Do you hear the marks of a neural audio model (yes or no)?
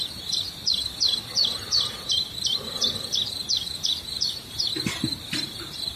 no